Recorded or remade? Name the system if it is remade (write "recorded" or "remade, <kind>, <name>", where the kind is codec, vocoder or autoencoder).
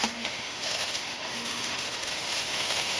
remade, autoencoder, DAC-VAE